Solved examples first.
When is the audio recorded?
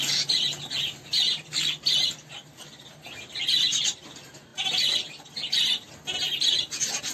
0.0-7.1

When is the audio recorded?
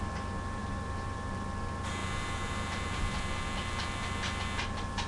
0.0-0.6; 1.3-2.0; 4.4-5.1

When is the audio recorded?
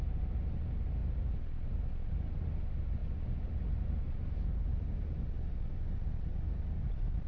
0.0-7.3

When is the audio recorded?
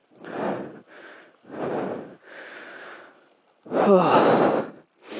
0.0-5.2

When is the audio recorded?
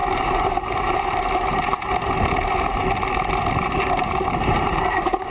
2.8-3.6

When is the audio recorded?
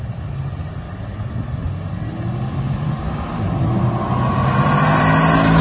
0.0-5.6